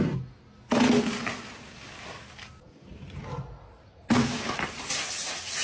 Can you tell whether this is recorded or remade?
recorded